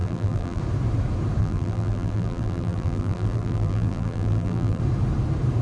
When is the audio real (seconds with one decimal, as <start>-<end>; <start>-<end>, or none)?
0.6-1.4; 4.8-5.6